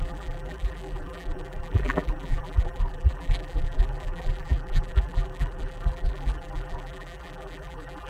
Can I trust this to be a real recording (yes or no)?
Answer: no